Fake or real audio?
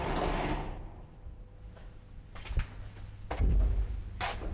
real